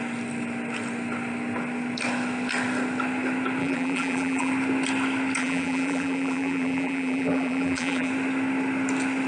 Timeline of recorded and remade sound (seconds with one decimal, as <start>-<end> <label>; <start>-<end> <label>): 0.0-3.6 recorded; 3.6-4.5 remade; 4.5-5.4 recorded; 5.4-8.1 remade; 8.1-9.3 recorded